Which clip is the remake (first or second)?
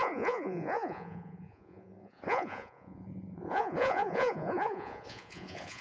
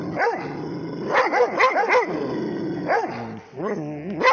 first